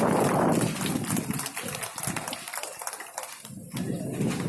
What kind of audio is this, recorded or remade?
recorded